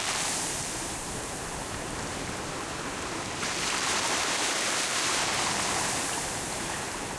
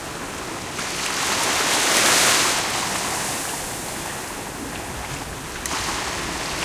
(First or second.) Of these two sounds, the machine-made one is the first